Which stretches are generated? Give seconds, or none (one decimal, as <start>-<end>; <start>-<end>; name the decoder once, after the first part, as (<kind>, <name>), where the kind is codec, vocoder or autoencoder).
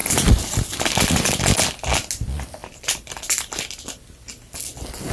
0.0-1.3 (vocoder, BigVGAN v2); 2.6-3.6